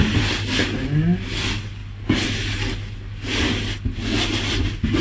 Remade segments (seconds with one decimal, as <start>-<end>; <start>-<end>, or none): none